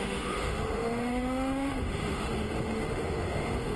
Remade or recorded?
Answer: remade